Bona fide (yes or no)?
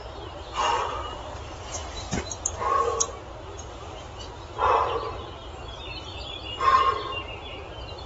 no